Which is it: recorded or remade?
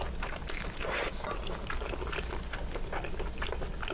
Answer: recorded